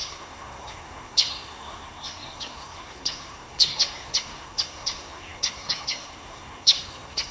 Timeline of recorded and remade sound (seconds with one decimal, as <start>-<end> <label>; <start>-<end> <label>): 0.0-7.3 remade

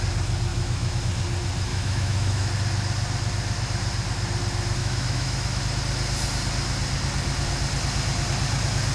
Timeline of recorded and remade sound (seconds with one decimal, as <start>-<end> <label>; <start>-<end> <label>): 0.0-0.5 recorded; 0.5-1.0 remade; 1.0-1.7 recorded; 1.7-2.5 remade; 2.5-4.8 recorded; 4.8-5.6 remade; 5.6-8.9 recorded

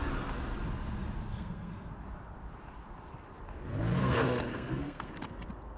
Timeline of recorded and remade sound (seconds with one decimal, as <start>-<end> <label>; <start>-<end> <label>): 0.0-1.3 recorded; 1.3-1.9 remade; 1.9-4.0 recorded; 4.0-5.1 remade; 5.1-5.8 recorded

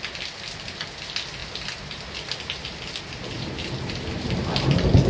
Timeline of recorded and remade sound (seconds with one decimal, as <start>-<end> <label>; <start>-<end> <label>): 0.0-5.1 recorded

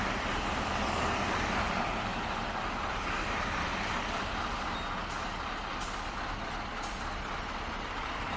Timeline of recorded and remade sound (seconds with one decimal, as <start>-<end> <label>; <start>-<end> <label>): 0.0-2.1 remade; 2.1-2.8 recorded; 2.8-5.0 remade; 5.0-5.8 recorded; 5.8-8.4 remade

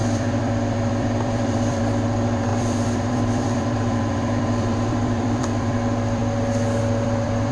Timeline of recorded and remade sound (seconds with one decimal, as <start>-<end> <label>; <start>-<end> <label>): 0.0-6.2 remade; 6.2-6.8 recorded; 6.8-7.5 remade

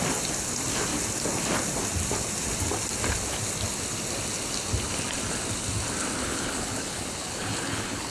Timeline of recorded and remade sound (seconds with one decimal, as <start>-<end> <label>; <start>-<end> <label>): 0.0-6.2 recorded; 6.2-8.1 remade

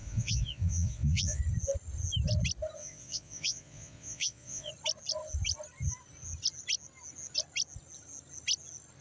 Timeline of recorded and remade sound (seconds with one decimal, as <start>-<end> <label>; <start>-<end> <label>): 0.0-1.4 remade; 1.4-2.8 recorded; 2.8-4.7 remade; 4.7-9.0 recorded